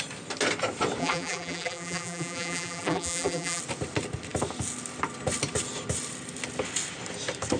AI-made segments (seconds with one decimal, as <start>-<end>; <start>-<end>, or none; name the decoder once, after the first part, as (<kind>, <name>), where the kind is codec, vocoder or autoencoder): 1.0-3.6 (vocoder, BigVGAN v2)